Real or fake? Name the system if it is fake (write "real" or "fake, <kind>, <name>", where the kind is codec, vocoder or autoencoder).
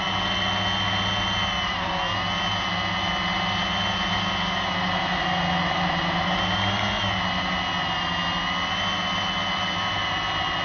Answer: real